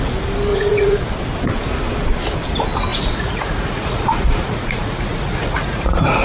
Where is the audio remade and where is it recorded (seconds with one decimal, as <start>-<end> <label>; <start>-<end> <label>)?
0.0-0.5 recorded; 0.5-1.1 remade; 1.1-2.9 recorded; 2.9-6.2 remade